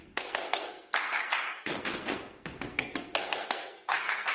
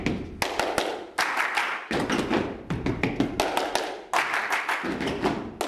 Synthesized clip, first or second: first